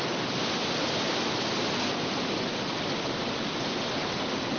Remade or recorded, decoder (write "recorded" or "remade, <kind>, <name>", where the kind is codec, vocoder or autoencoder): recorded